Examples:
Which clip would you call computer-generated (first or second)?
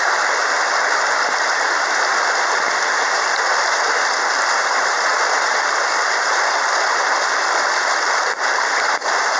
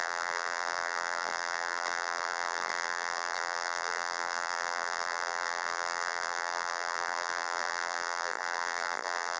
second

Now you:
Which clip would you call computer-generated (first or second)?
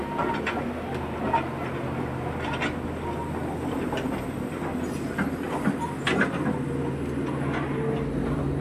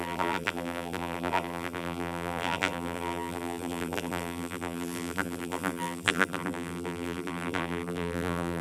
second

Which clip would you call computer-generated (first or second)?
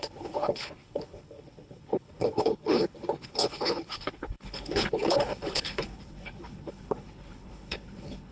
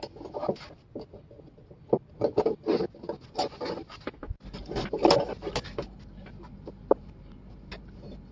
first